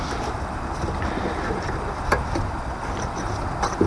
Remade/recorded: recorded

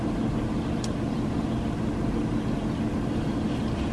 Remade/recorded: recorded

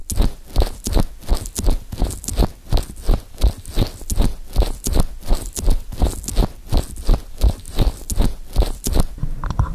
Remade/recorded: recorded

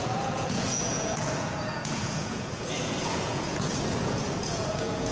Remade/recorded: remade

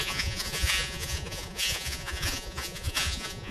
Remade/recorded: remade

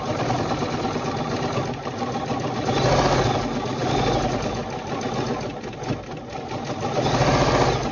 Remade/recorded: recorded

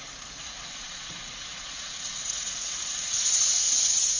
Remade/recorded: remade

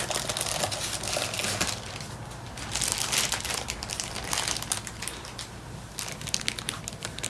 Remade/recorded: recorded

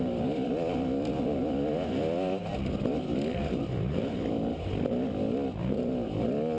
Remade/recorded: recorded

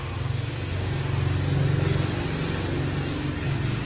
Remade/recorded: recorded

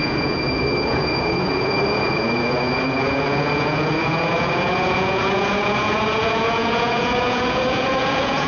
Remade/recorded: remade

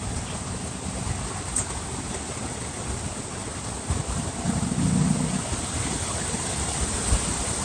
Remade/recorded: recorded